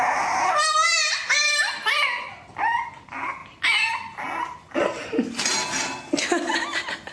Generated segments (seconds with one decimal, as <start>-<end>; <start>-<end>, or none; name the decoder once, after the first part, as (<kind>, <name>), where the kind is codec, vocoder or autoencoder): none